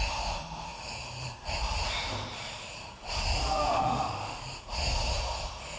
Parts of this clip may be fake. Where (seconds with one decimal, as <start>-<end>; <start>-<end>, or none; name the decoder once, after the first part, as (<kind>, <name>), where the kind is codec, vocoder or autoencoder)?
3.4-4.4 (autoencoder, DAC-VAE)